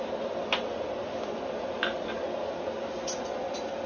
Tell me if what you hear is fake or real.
real